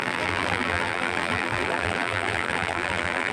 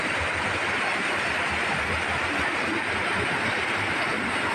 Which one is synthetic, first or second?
first